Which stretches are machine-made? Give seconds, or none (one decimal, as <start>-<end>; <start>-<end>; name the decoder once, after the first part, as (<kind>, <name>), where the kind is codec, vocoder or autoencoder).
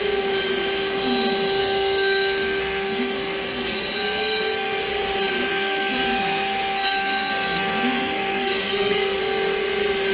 1.6-4.8 (codec, SNAC); 5.5-9.2